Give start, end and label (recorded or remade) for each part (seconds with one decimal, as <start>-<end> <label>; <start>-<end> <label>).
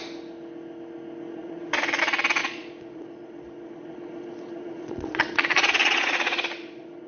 0.0-1.3 recorded; 1.3-2.0 remade; 2.0-2.4 recorded; 2.4-7.1 remade